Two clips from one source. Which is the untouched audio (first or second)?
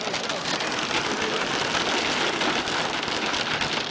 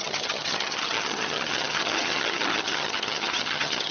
first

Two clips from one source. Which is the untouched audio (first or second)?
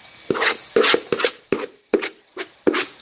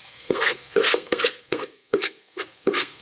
first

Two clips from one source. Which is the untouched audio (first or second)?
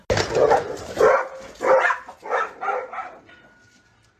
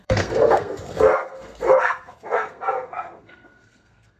first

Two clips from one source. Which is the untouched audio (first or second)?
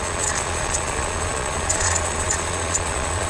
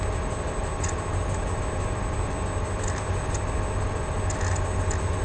second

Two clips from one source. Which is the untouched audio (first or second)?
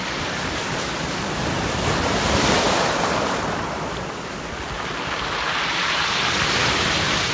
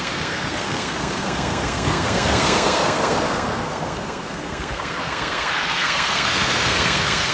first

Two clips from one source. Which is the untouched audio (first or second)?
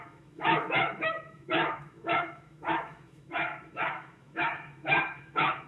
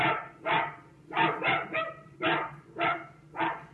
second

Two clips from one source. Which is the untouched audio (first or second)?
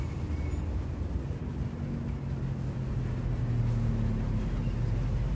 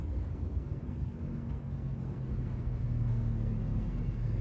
first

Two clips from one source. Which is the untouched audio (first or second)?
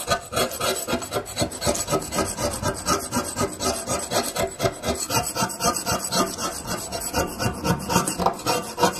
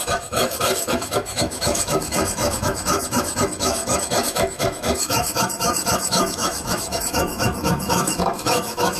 first